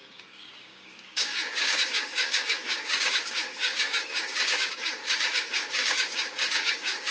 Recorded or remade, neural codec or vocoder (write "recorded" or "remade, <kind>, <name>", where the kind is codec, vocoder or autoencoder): remade, codec, DAC